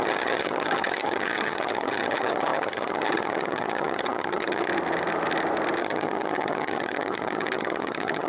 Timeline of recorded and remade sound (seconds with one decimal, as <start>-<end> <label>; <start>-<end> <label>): 0.0-4.7 remade; 4.7-5.8 recorded; 5.8-8.3 remade